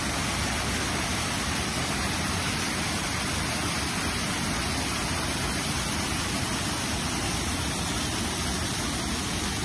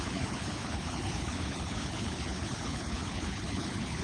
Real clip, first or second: first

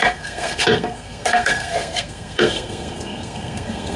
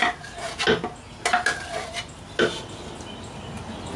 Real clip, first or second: second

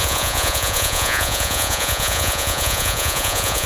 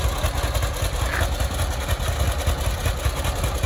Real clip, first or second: second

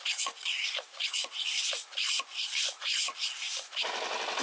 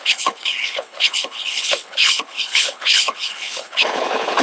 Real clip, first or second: first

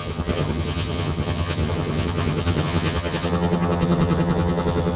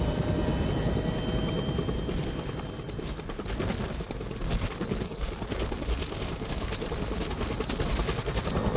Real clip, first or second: second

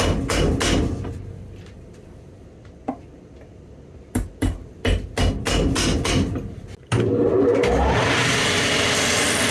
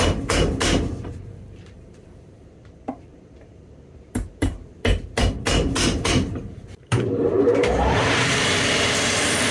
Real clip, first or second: first